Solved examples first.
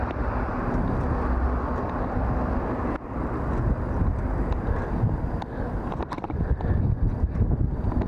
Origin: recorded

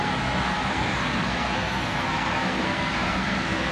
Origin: remade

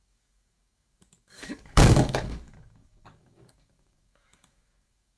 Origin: remade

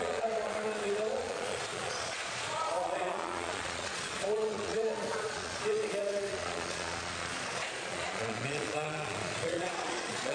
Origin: remade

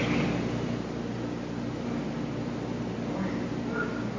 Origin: recorded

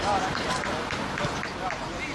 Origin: recorded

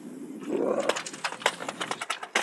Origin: recorded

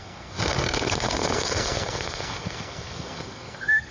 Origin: remade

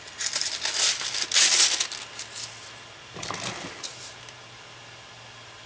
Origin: recorded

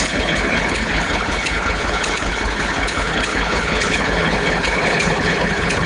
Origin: remade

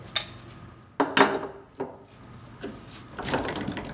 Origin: recorded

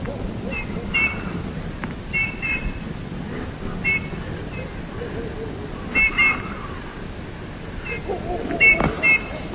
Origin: recorded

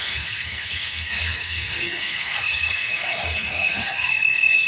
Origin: remade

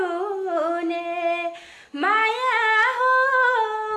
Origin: recorded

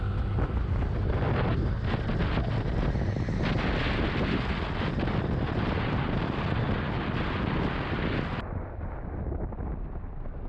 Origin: recorded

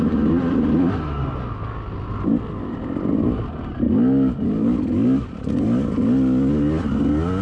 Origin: recorded